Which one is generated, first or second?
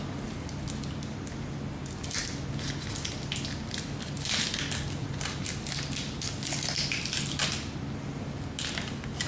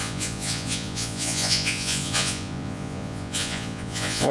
second